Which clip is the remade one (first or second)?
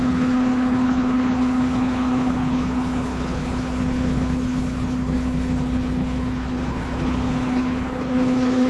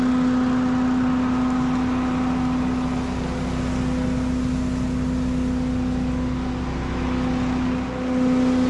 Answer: first